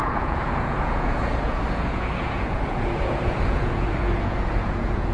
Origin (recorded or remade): remade